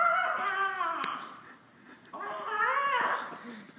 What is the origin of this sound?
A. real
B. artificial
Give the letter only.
A